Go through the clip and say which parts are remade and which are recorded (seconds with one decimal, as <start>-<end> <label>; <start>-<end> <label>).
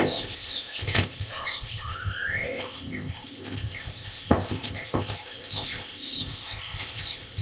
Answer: 0.0-7.4 remade